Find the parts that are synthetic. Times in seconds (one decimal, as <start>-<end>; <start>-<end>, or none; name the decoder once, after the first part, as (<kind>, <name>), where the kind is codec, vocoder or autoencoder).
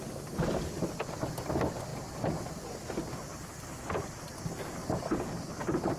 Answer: none